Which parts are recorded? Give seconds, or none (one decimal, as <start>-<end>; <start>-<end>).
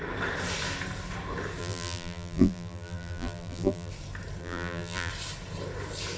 0.0-1.6; 3.9-4.4; 5.1-6.2